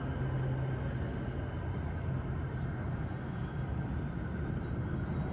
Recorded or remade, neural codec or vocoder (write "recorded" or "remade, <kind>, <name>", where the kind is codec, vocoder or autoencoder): recorded